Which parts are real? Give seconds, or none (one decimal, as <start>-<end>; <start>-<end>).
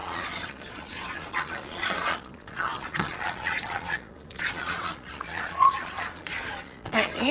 none